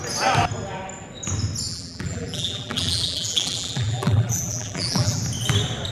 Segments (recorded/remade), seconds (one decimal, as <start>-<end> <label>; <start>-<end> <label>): 0.0-1.7 recorded; 1.7-5.2 remade; 5.2-5.9 recorded